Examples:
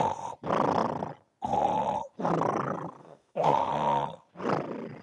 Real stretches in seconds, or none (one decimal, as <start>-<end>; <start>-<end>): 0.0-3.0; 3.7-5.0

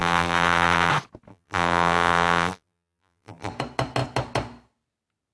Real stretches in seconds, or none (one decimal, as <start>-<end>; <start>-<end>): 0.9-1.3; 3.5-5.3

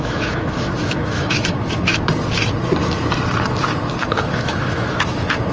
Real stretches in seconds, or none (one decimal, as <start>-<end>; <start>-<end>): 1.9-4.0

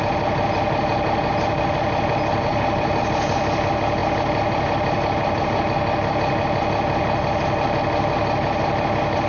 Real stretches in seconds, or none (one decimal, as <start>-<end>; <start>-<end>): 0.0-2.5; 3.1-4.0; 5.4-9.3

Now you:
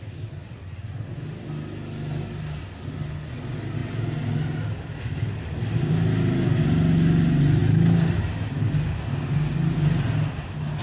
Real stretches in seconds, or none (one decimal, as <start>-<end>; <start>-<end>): 0.0-10.8